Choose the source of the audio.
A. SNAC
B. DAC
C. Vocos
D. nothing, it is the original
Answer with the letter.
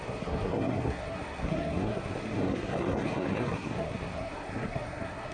A